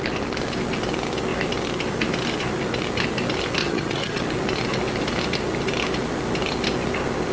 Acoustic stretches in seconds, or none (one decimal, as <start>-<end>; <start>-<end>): 0.0-3.6; 4.2-7.3